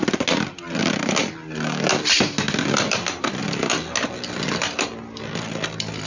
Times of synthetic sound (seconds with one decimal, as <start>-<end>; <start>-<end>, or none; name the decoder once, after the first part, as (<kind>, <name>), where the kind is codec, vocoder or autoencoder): none